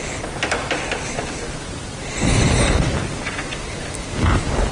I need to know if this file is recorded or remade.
recorded